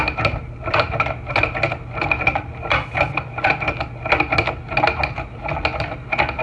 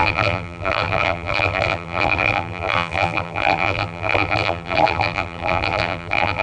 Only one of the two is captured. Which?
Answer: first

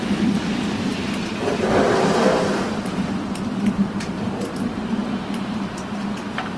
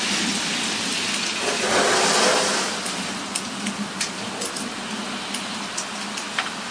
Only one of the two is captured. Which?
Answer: second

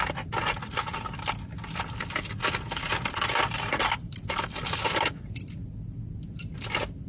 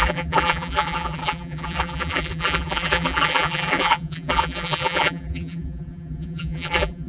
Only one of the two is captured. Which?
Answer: first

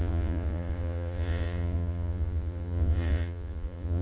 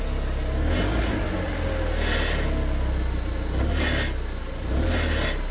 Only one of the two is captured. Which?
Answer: second